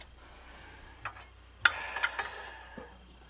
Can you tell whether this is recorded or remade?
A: recorded